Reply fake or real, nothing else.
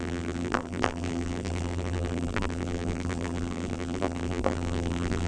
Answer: fake